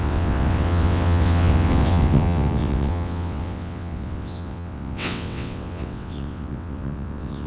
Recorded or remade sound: remade